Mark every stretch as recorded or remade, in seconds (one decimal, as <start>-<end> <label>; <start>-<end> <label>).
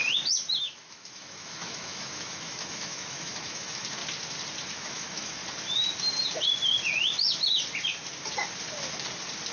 0.0-0.6 recorded; 0.6-4.0 remade; 4.0-4.7 recorded; 4.7-5.4 remade; 5.4-9.5 recorded